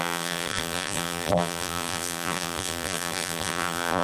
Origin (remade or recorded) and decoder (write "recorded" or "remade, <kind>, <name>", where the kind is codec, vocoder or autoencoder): remade, vocoder, BigVGAN v2